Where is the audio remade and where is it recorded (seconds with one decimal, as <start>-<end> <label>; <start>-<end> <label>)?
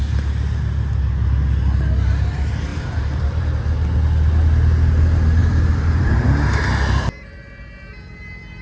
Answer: 0.0-2.7 recorded; 2.7-3.5 remade; 3.5-5.4 recorded; 5.4-6.6 remade; 6.6-8.6 recorded